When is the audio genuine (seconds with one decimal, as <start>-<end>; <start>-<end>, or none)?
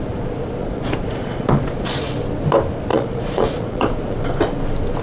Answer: 0.0-0.6; 1.9-2.9; 4.2-5.0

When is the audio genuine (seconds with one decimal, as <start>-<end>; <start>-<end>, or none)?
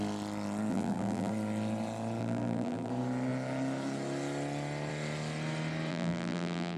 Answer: 0.0-0.7; 1.3-2.2; 2.9-5.9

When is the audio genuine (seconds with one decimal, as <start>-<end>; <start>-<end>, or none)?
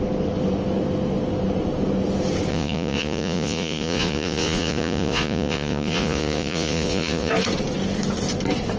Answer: 0.0-2.5; 7.3-8.8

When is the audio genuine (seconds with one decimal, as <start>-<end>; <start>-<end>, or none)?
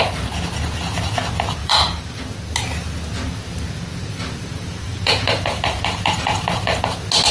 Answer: 0.0-1.6; 2.2-3.9; 6.8-7.3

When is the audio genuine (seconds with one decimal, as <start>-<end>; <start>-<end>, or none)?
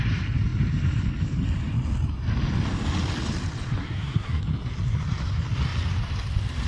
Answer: 0.0-3.8; 4.4-6.7